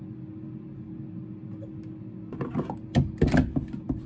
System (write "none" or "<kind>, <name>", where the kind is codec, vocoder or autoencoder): none